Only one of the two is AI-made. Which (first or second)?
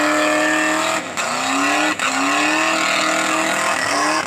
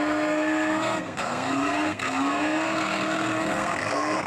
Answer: second